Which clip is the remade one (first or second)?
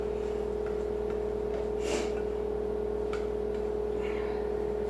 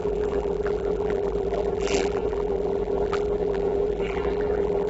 second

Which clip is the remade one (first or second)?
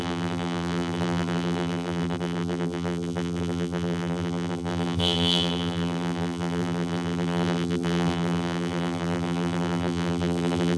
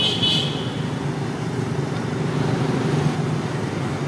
first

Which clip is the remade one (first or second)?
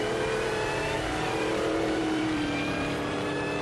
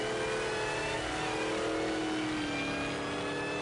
first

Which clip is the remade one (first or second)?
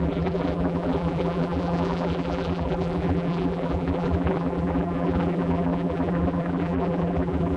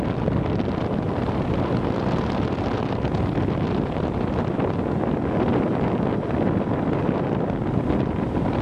first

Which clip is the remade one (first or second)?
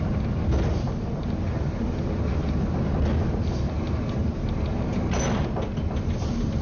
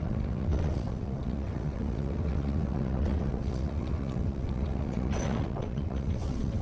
second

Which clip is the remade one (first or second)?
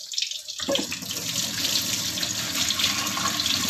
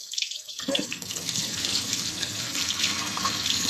second